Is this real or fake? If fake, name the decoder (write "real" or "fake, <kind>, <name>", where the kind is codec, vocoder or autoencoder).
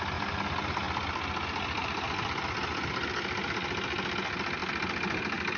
real